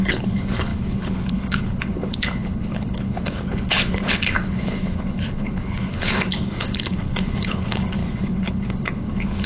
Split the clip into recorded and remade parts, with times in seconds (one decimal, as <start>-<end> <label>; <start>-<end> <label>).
0.0-9.5 remade